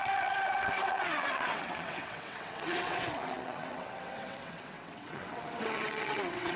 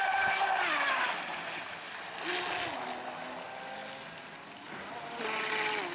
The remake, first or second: first